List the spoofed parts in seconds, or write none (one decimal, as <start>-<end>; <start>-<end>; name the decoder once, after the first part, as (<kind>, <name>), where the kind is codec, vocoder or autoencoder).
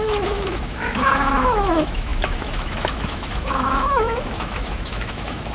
0.0-5.5 (autoencoder, DAC-VAE)